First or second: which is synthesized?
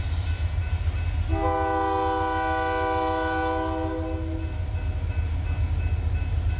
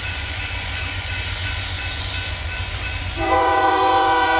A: second